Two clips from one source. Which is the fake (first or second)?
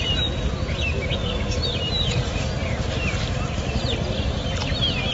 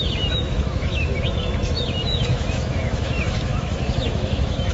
second